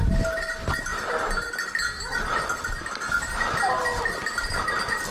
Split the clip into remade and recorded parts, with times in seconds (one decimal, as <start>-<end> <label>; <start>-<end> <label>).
0.0-5.1 recorded